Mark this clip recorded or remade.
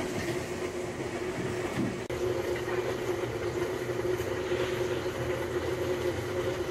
recorded